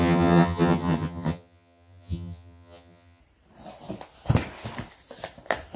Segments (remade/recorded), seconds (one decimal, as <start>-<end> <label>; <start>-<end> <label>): 0.0-3.2 remade; 3.2-5.8 recorded